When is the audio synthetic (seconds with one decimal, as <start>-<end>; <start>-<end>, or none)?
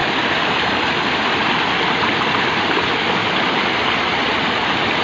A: none